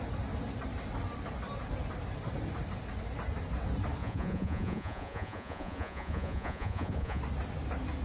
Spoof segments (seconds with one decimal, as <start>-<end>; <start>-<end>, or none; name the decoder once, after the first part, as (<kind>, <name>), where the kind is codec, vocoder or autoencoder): 4.0-7.2 (vocoder, Vocos)